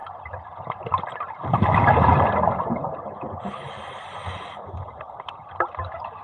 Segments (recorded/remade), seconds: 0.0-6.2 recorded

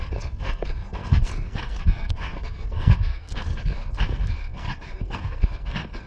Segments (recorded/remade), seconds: 0.0-6.1 remade

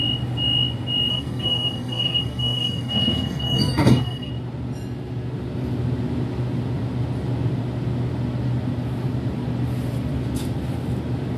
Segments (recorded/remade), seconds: 0.0-1.1 recorded; 1.1-4.3 remade; 4.3-11.4 recorded

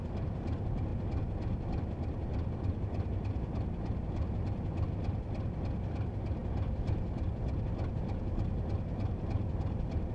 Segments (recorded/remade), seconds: 0.0-10.1 recorded

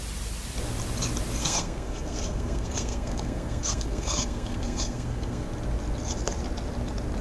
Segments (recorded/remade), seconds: 0.0-1.4 recorded; 1.4-5.5 remade; 5.5-7.2 recorded

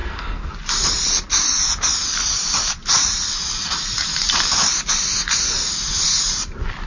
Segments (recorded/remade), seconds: 0.0-0.5 remade; 0.5-6.9 recorded

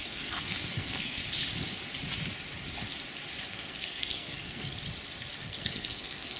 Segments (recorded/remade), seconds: 0.0-1.2 remade; 1.2-3.5 recorded; 3.5-4.7 remade; 4.7-5.4 recorded; 5.4-6.4 remade

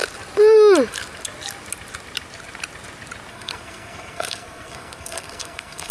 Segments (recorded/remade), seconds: 0.0-3.3 recorded; 3.3-5.9 remade